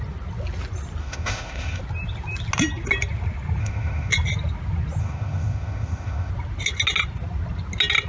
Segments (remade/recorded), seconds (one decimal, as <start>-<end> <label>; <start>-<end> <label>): 0.0-1.0 recorded; 1.0-1.8 remade; 1.8-3.6 recorded; 3.6-4.1 remade; 4.1-5.0 recorded; 5.0-6.3 remade; 6.3-8.1 recorded